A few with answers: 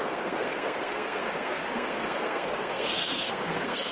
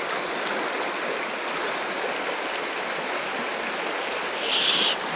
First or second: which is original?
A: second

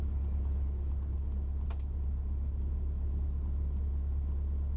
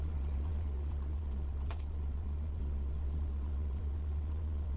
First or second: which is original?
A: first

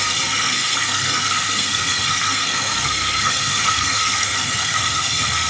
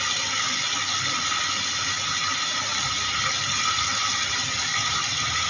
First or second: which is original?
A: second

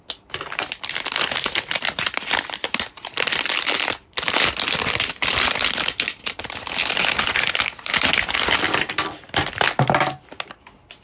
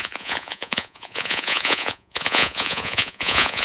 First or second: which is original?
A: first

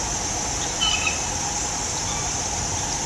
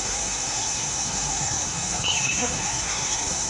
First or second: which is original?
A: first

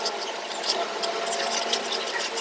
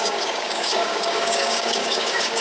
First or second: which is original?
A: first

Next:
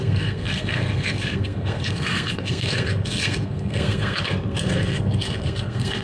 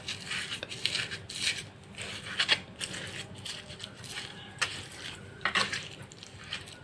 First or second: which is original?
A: second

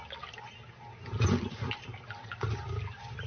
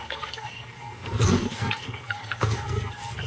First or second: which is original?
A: first